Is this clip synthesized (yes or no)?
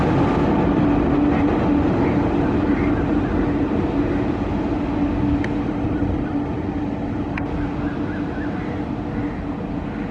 no